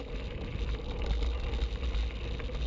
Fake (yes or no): no